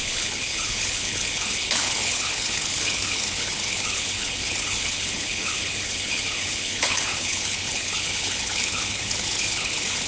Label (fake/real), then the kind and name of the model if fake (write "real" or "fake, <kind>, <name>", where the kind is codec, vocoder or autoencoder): fake, codec, HILCodec